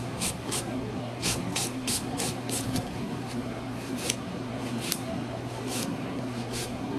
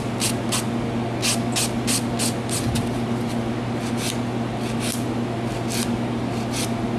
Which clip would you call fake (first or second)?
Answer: first